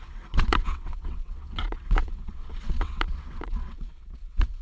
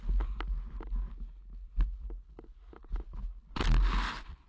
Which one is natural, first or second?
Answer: second